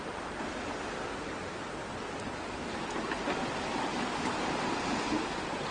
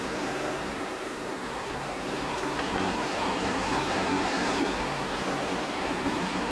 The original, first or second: first